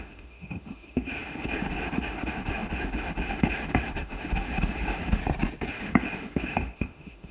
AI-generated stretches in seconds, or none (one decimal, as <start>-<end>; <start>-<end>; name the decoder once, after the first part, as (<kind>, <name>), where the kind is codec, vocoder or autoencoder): 0.0-5.2 (autoencoder, DAC-VAE); 5.7-7.3